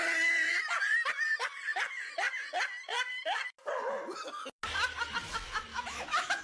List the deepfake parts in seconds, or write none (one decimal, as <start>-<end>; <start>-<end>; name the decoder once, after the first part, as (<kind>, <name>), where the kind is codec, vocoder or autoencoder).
5.7-6.4 (autoencoder, DAC-VAE)